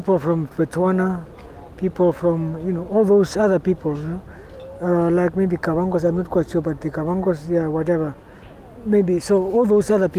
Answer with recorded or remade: recorded